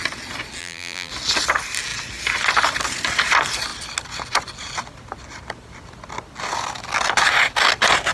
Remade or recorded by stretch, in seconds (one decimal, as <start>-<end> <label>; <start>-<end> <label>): 0.0-0.6 recorded; 0.6-1.1 remade; 1.1-8.1 recorded

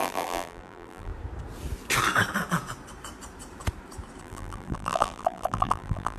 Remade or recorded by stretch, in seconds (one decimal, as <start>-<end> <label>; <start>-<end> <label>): 0.0-1.1 remade; 1.1-4.2 recorded; 4.2-6.2 remade